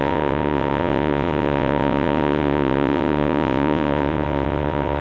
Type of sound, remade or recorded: remade